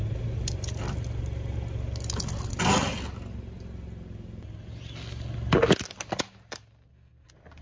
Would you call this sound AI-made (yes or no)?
no